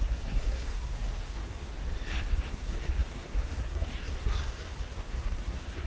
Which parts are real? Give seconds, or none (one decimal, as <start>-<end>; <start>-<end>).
1.7-2.5